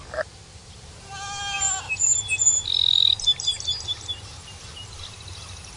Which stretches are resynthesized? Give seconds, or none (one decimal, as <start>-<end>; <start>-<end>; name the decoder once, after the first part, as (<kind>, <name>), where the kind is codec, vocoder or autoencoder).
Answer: none